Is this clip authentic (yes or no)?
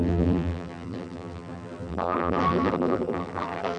no